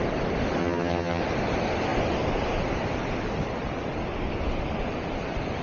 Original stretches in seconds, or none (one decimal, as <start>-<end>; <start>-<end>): 0.0-0.6; 1.2-5.6